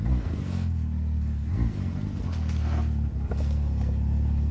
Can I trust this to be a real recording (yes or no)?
no